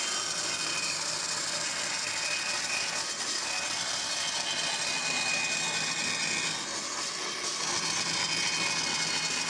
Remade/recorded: recorded